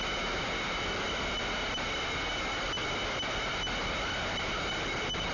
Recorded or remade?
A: recorded